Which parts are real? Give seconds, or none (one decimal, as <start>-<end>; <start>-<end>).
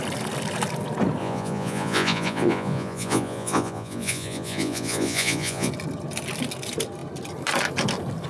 0.0-1.2; 5.7-8.3